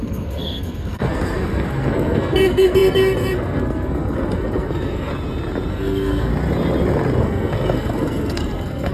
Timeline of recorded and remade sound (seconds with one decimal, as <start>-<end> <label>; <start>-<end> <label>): 0.0-5.1 remade; 5.1-5.7 recorded; 5.7-6.3 remade; 6.3-7.2 recorded; 7.2-8.9 remade